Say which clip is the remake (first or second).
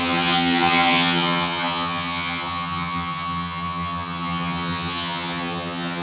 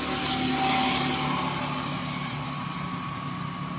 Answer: first